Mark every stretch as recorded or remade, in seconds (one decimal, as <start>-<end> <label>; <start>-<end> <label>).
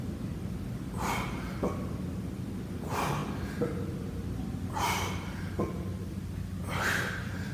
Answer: 0.0-7.5 recorded